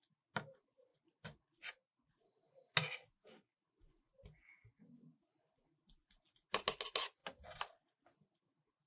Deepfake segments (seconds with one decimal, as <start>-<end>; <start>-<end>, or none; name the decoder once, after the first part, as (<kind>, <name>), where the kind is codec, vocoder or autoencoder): 0.9-2.1 (vocoder, BigVGAN v2)